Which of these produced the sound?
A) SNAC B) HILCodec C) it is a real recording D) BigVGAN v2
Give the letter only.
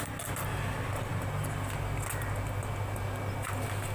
C